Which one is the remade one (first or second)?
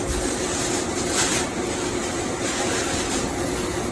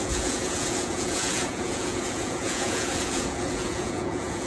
second